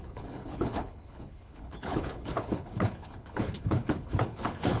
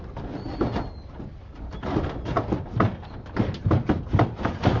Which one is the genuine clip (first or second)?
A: second